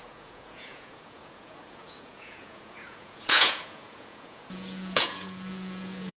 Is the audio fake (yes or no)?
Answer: yes